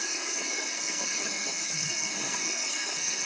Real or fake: fake